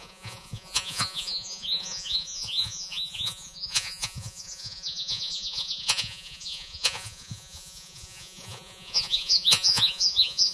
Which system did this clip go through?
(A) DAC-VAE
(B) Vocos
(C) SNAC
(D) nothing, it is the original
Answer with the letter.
B